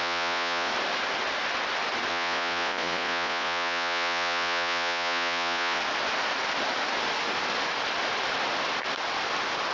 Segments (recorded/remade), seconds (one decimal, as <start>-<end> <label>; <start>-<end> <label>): 0.0-0.7 remade; 0.7-2.1 recorded; 2.1-5.8 remade; 5.8-9.7 recorded